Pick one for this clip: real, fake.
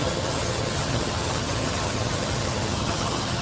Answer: fake